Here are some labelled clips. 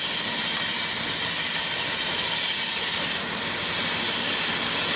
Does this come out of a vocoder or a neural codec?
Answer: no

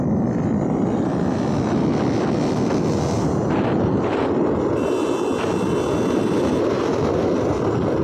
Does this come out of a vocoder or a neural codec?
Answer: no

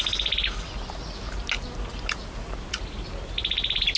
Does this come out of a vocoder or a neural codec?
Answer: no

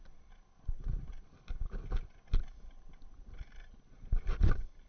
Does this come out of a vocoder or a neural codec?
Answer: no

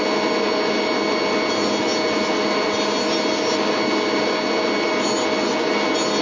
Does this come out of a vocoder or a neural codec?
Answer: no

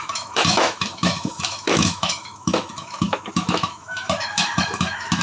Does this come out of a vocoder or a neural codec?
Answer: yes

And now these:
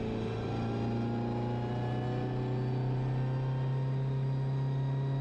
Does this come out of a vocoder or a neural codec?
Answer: no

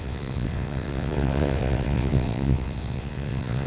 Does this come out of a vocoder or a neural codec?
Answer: yes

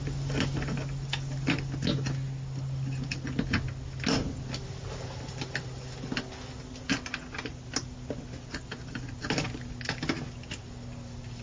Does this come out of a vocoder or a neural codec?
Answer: no